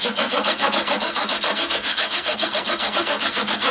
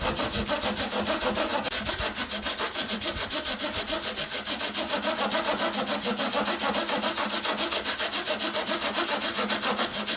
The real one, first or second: second